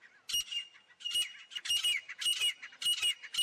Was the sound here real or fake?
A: real